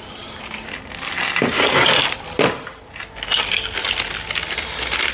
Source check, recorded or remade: recorded